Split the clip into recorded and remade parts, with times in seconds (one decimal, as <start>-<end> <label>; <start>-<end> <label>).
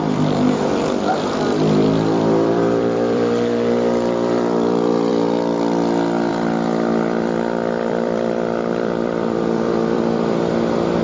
0.0-5.1 remade; 5.1-6.3 recorded; 6.3-11.0 remade